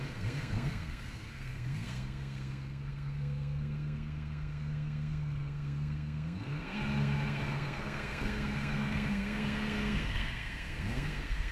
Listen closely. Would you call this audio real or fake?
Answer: fake